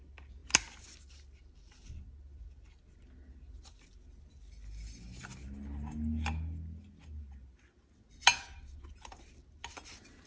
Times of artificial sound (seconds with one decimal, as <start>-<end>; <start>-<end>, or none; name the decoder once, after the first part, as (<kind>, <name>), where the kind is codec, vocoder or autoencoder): none